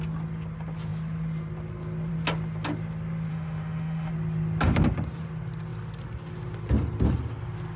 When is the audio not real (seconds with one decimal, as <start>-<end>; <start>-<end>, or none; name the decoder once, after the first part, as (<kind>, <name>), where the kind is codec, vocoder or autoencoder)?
3.3-4.1 (autoencoder, DAC-VAE)